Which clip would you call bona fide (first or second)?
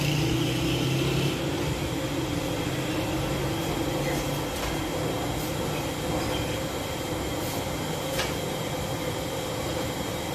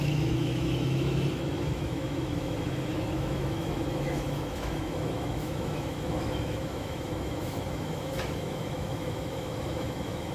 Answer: first